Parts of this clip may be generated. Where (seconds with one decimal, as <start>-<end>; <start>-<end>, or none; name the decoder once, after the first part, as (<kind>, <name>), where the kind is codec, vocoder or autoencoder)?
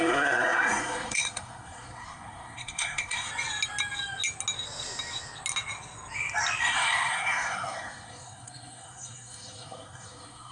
0.0-3.3 (codec, SNAC); 6.6-10.5